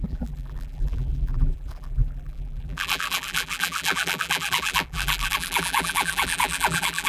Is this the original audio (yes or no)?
no